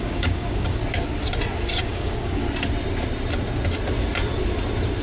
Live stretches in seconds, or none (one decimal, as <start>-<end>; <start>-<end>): 0.8-1.8; 2.4-5.0